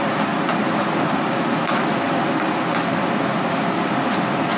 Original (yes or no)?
yes